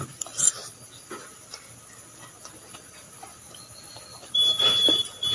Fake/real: real